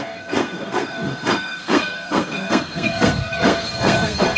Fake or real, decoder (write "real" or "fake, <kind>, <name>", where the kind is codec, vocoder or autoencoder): fake, codec, SNAC